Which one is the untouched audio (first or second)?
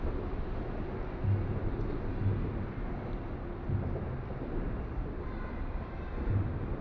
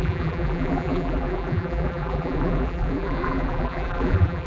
first